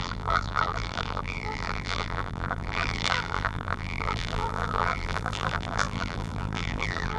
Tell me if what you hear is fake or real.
fake